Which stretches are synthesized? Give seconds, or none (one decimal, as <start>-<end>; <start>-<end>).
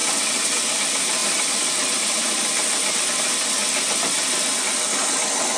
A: 0.0-0.7